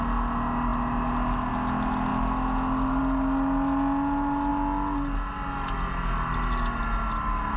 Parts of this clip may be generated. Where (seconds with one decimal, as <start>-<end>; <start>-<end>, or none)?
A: none